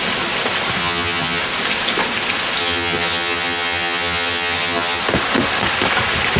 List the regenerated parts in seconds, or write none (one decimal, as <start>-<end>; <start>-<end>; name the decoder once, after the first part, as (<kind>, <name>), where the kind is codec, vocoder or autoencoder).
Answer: 0.8-1.4 (vocoder, HiFi-GAN); 2.6-5.0